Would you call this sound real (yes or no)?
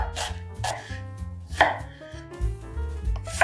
yes